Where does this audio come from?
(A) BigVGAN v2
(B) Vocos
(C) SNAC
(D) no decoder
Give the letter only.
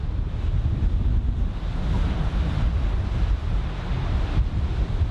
D